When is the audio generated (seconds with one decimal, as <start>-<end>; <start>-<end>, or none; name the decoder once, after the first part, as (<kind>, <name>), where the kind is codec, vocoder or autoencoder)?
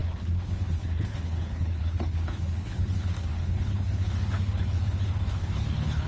0.0-6.1 (codec, HILCodec)